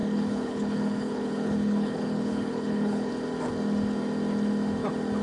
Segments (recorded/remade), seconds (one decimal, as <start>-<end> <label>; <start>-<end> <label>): 0.0-3.1 remade; 3.1-5.2 recorded